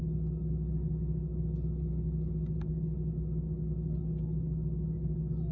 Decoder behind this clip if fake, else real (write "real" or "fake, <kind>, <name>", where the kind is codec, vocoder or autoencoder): real